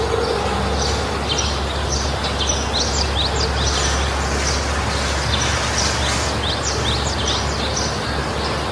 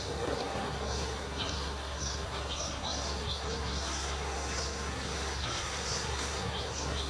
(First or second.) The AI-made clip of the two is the second